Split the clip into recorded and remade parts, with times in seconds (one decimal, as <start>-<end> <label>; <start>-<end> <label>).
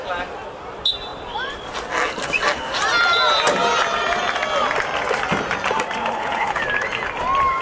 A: 0.0-6.0 recorded; 6.0-6.6 remade; 6.6-7.6 recorded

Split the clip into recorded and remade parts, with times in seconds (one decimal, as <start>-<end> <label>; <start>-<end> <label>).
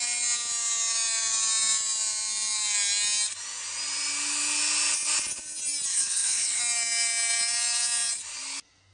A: 0.0-5.9 recorded; 5.9-6.6 remade; 6.6-8.9 recorded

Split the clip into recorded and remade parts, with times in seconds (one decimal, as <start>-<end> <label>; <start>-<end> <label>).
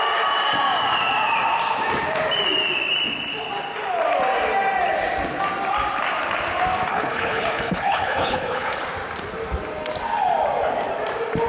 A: 0.0-6.9 recorded; 6.9-8.8 remade; 8.8-11.5 recorded